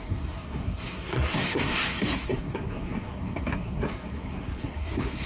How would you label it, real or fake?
fake